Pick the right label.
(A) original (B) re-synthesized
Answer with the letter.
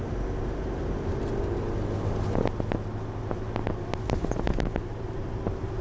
A